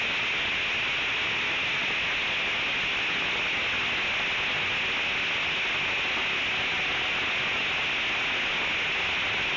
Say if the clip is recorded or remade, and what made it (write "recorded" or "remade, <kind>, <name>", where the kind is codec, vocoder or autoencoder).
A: recorded